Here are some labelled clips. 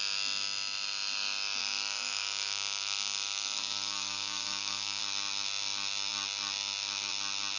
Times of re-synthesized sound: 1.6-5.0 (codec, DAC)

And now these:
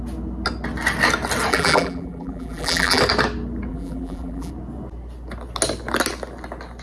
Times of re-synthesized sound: 1.5-3.0 (vocoder, BigVGAN v2); 3.7-4.5